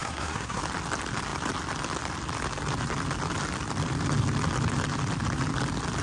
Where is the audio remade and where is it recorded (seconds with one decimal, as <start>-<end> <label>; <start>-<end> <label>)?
0.0-0.6 remade; 0.6-6.0 recorded